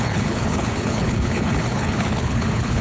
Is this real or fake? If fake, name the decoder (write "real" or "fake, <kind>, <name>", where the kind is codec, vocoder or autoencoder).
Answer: fake, codec, HILCodec